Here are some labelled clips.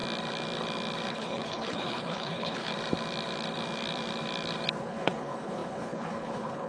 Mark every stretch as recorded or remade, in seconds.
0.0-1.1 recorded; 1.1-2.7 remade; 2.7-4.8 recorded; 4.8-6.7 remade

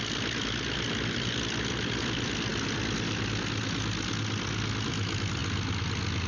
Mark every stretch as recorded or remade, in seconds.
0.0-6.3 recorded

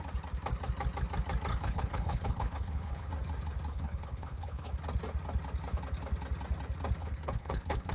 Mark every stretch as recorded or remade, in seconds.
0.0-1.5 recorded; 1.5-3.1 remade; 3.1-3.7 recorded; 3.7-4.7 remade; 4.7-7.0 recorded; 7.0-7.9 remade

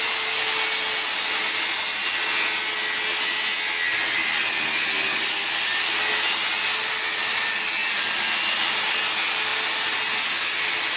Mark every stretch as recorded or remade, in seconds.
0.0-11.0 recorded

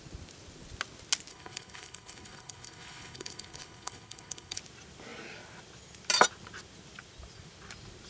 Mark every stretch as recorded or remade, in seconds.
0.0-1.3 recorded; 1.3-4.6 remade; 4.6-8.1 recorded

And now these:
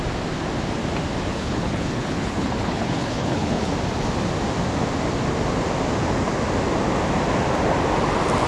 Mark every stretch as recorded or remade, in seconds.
0.0-1.3 recorded; 1.3-3.7 remade; 3.7-8.5 recorded

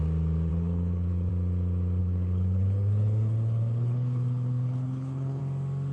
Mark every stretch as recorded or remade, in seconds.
0.0-0.5 recorded; 0.5-1.3 remade; 1.3-2.0 recorded; 2.0-5.4 remade; 5.4-5.9 recorded

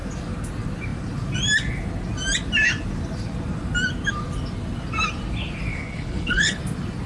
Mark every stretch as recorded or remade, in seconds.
0.0-5.7 recorded; 5.7-6.6 remade; 6.6-7.1 recorded